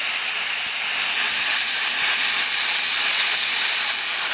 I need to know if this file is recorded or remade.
remade